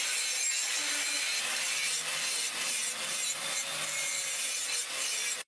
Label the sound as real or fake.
real